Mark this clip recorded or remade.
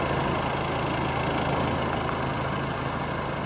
recorded